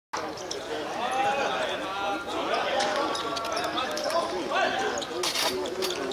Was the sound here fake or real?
real